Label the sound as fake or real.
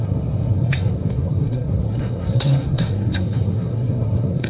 fake